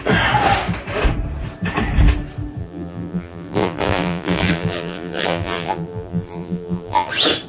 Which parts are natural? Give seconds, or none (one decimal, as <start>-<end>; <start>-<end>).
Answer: 0.0-2.6; 7.1-7.5